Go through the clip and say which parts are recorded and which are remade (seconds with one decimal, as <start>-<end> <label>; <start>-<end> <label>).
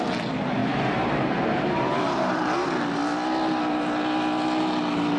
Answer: 0.0-0.6 recorded; 0.6-2.7 remade; 2.7-5.2 recorded